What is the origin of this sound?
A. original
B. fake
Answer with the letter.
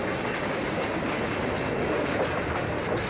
A